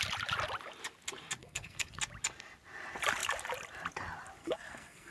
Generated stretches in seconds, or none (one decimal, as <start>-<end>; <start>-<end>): 1.4-2.0; 4.4-5.1